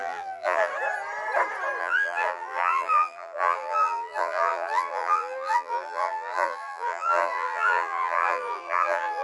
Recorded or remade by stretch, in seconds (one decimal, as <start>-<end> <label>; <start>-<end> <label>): 0.0-0.7 remade; 0.7-1.8 recorded; 1.8-9.2 remade